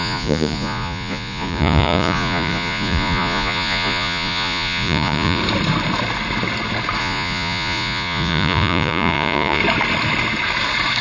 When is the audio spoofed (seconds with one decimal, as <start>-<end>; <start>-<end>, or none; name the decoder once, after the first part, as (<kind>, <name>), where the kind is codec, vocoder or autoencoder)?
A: 0.0-5.4 (vocoder, Vocos); 7.0-9.6